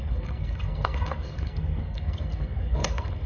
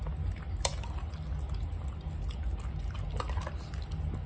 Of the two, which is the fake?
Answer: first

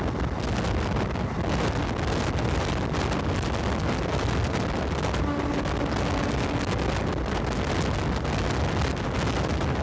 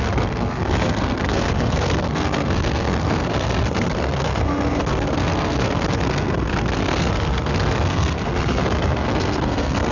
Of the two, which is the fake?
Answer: second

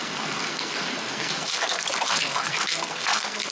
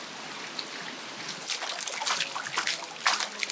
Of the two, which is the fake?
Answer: first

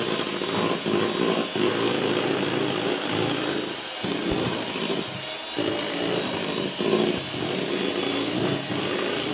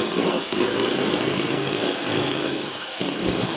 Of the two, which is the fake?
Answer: second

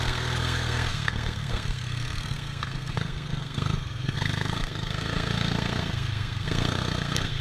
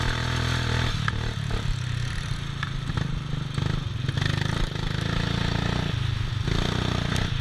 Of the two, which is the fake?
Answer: first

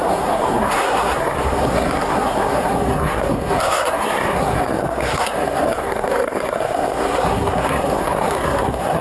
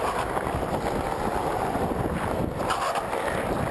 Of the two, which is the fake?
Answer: first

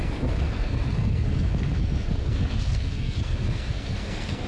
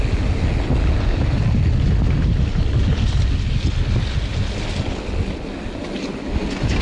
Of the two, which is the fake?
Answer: first